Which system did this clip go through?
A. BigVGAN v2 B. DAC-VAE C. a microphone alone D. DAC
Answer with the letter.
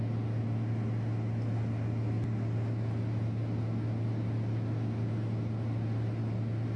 C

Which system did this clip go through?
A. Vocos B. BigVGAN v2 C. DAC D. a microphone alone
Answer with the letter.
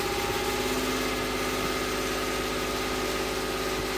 D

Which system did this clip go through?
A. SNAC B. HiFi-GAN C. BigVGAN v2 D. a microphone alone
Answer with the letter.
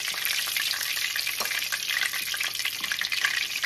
D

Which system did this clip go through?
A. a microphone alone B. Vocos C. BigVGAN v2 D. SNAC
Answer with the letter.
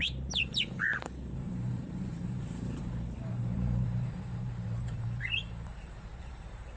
C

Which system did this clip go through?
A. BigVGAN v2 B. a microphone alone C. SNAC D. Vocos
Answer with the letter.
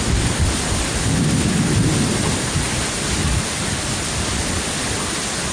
B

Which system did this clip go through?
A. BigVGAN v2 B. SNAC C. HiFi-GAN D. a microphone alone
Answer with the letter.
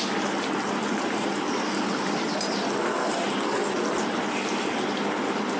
D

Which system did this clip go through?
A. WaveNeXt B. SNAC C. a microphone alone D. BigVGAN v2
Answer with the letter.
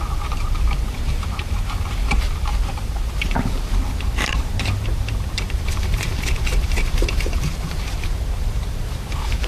D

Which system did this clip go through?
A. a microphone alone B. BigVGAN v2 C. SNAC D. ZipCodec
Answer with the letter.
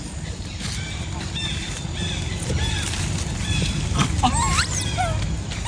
A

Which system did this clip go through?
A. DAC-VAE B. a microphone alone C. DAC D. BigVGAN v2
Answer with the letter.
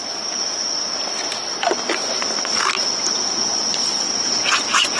B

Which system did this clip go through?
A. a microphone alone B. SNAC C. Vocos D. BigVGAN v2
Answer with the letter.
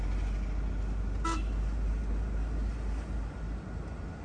A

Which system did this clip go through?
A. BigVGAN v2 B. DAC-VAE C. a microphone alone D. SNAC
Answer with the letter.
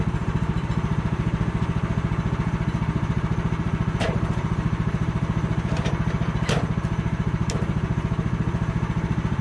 A